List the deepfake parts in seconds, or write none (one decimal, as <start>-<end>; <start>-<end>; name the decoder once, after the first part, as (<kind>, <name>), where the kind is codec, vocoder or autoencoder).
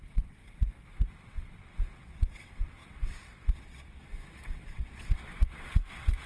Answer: 0.0-0.4 (vocoder, WaveNeXt); 1.1-6.3